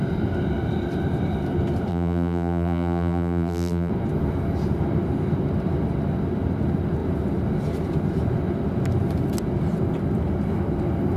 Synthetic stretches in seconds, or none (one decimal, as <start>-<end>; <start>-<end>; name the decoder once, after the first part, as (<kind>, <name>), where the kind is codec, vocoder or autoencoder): 1.9-3.9 (vocoder, BigVGAN v2)